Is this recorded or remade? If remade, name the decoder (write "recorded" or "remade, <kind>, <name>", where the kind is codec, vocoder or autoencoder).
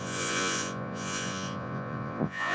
remade, vocoder, Vocos